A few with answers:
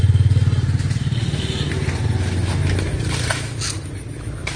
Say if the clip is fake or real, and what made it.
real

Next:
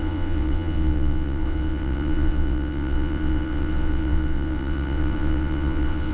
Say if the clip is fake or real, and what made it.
fake, vocoder, WaveNeXt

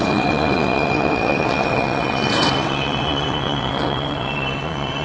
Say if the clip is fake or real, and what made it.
fake, vocoder, WaveNeXt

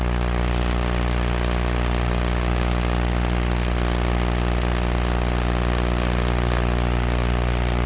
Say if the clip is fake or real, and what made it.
real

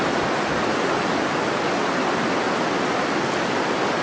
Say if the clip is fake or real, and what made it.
real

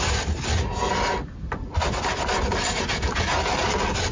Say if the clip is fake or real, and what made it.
real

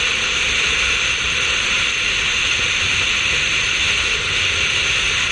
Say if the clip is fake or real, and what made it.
real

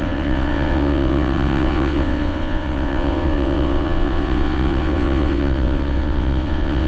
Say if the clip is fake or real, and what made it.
fake, vocoder, WaveNeXt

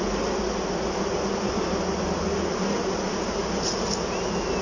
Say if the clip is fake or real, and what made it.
real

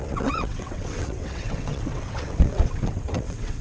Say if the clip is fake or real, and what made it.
fake, vocoder, WaveNeXt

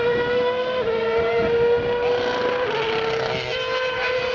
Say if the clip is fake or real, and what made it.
real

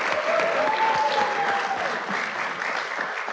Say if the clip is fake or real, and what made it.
real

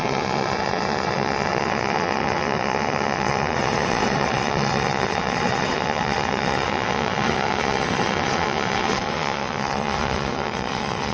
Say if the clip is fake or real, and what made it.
fake, vocoder, WaveNeXt